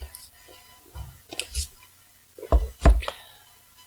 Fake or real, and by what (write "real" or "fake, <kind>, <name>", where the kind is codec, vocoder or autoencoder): real